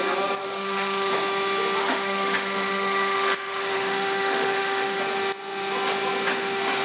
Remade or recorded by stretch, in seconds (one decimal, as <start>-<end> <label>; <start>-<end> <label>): 0.0-0.4 recorded; 0.4-1.1 remade; 1.1-1.8 recorded; 1.8-5.0 remade; 5.0-6.8 recorded